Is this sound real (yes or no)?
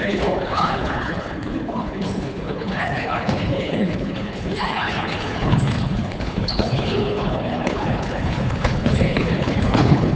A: no